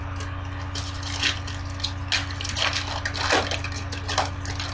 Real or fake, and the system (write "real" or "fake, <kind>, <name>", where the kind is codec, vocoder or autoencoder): real